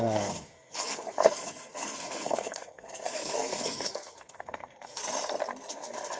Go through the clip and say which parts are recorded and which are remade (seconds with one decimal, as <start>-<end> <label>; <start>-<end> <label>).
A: 0.0-5.0 remade; 5.0-5.7 recorded; 5.7-6.2 remade